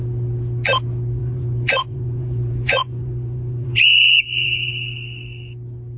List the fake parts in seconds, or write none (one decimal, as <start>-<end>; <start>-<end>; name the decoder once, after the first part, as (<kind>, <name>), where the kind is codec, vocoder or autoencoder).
1.2-4.7 (vocoder, Vocos)